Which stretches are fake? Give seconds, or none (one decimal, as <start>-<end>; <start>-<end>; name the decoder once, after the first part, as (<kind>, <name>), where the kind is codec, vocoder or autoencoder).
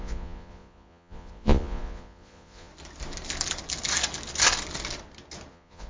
0.0-2.7 (vocoder, Vocos); 5.5-5.9